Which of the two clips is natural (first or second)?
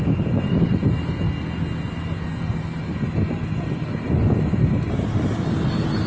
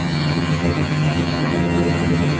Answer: first